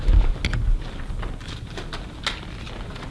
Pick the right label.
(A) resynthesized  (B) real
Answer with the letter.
B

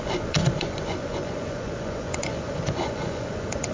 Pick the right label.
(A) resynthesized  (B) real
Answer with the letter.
A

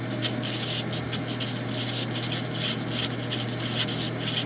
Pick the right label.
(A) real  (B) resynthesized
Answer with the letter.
A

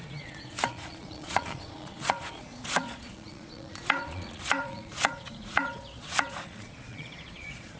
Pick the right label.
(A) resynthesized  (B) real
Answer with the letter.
A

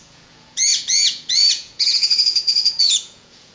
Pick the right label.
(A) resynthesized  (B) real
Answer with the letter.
A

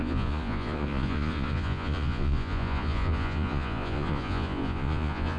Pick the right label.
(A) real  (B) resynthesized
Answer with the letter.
B